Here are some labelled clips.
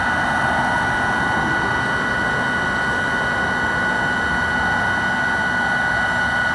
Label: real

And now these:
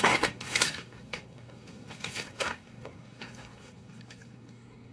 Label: fake